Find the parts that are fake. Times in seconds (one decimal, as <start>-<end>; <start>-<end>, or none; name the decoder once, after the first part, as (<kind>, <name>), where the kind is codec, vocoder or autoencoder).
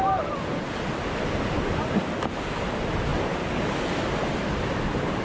none